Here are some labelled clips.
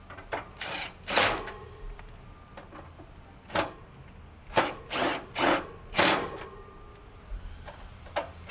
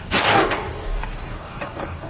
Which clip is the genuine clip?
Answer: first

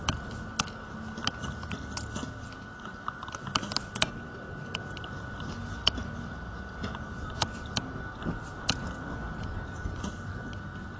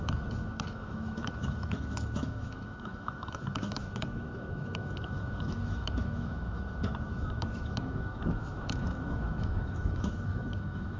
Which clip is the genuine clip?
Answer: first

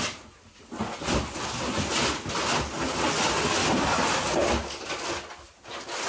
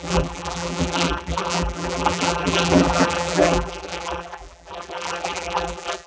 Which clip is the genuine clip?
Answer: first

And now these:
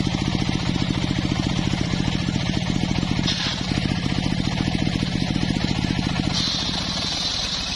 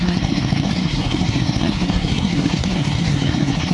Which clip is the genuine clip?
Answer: first